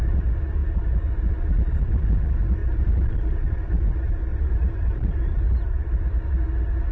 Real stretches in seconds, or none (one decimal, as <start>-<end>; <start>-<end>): 0.0-2.6; 3.7-4.3; 6.0-6.9